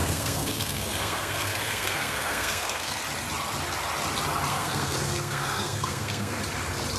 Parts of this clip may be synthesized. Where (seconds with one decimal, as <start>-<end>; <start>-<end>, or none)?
0.0-3.0; 4.5-6.4